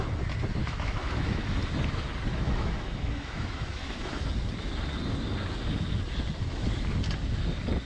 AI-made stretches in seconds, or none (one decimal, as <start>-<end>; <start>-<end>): 0.6-1.4; 2.3-4.2